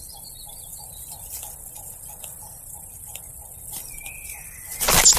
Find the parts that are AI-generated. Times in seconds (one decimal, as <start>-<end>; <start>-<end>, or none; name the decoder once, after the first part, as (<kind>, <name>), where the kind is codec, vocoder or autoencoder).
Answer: 0.0-3.4 (vocoder, BigVGAN v2)